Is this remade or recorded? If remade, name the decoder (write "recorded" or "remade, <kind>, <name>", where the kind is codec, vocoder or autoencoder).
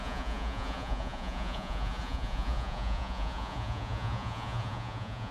remade, vocoder, Vocos